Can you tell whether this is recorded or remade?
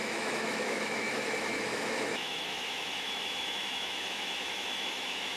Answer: remade